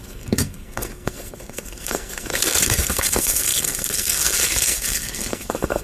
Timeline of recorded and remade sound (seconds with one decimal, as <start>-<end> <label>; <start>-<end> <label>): 0.0-5.8 remade